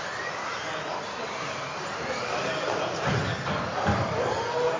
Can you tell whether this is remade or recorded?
recorded